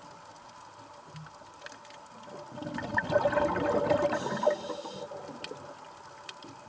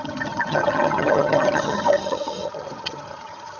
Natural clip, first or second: first